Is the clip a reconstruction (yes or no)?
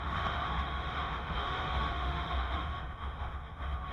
yes